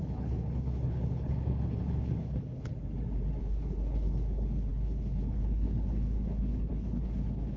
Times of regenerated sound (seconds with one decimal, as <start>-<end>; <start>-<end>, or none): 0.0-2.7; 3.4-7.6